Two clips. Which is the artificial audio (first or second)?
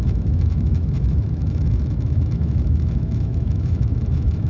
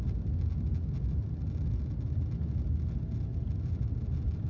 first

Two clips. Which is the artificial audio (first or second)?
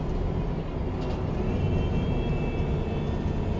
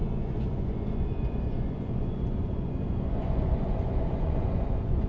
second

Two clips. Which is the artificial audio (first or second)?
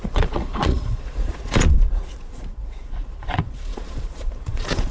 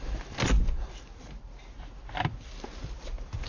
first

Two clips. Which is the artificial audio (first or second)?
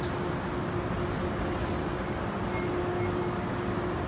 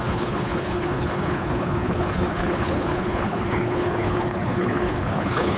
second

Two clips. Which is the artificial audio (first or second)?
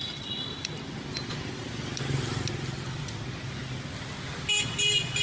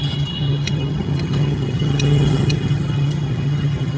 second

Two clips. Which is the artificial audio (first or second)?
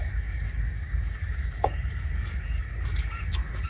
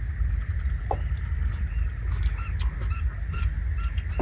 first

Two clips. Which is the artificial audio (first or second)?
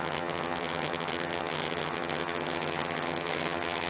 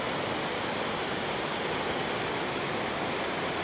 first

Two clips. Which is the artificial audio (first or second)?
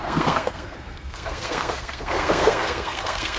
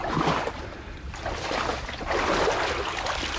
first